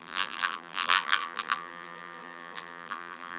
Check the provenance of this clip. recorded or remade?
remade